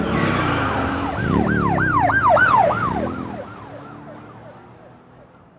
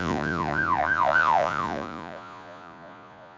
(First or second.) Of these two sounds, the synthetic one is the second